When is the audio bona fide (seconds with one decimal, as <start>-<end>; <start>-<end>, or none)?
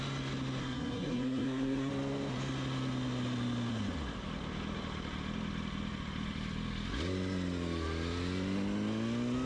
0.0-0.6; 1.9-9.5